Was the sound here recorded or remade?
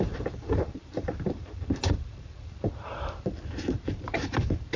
remade